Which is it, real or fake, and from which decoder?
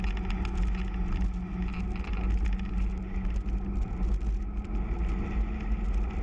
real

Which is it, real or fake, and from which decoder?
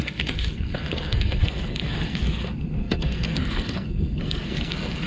fake, codec, SNAC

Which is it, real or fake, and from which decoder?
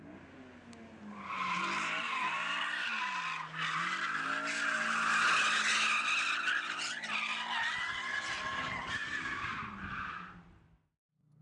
real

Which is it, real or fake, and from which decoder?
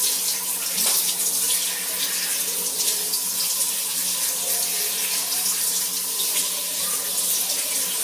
real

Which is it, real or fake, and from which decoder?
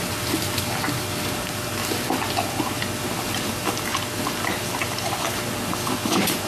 real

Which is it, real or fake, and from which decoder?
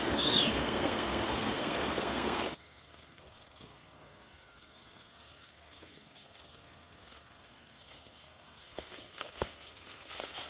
fake, codec, SNAC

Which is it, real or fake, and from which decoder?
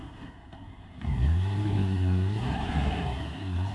fake, codec, SNAC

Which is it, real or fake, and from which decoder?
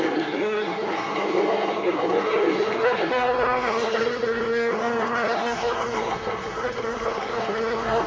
fake, codec, SNAC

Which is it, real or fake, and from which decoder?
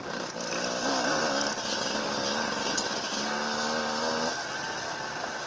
real